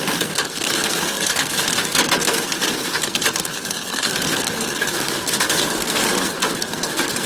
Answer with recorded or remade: remade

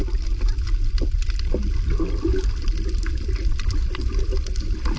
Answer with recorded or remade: recorded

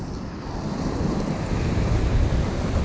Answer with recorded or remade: recorded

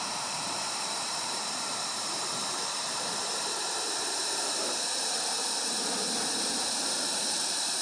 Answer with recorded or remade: remade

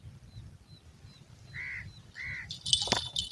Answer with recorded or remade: recorded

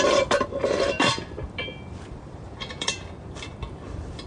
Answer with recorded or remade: remade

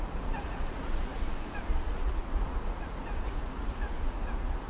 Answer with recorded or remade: remade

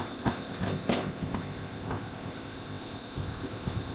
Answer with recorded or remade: remade